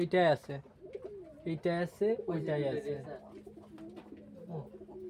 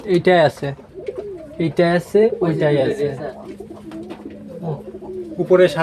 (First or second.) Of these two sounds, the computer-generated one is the second